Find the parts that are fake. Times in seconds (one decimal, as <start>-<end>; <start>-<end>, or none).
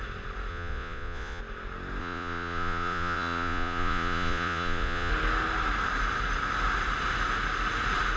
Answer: 0.5-1.4; 2.0-5.1